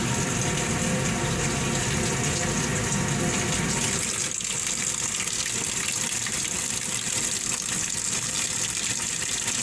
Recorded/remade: recorded